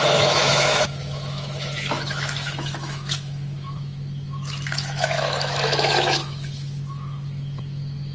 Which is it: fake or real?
fake